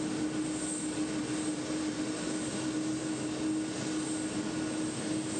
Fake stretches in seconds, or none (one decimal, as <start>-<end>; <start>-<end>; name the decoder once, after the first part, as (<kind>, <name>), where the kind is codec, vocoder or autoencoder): none